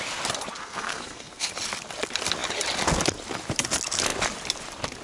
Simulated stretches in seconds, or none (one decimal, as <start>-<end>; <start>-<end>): 0.6-1.5